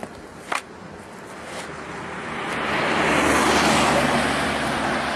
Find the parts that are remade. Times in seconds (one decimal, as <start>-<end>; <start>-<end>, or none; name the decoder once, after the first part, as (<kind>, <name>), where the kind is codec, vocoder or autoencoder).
none